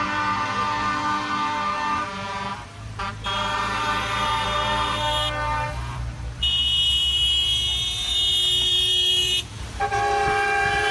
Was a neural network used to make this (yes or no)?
yes